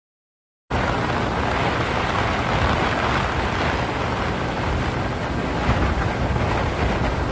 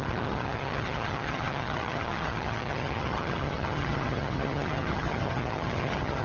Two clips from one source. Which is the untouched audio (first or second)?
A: first